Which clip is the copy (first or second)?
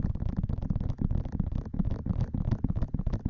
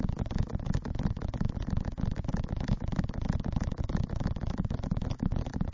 second